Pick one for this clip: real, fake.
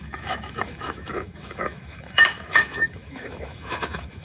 fake